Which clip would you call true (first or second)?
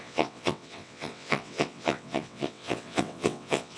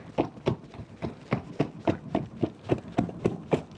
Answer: second